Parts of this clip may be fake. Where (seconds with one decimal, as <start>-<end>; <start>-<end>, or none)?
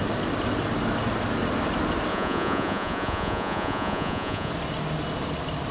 2.1-4.5